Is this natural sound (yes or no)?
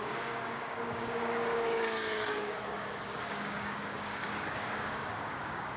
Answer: no